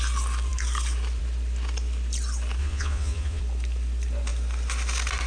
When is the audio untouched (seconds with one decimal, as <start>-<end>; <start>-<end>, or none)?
0.0-2.6; 3.4-5.3